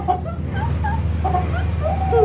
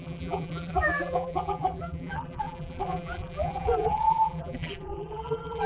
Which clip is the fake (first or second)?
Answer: second